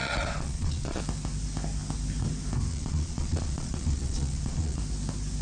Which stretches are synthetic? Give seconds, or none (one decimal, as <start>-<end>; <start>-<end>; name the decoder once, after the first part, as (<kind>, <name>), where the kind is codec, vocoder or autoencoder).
0.0-1.0 (vocoder, Vocos); 2.7-4.8